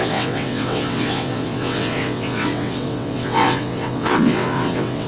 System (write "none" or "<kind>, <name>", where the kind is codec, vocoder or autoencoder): vocoder, WaveNeXt